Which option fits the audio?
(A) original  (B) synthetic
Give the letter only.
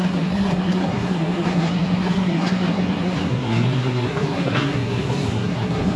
B